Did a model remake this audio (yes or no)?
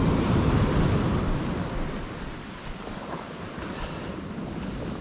no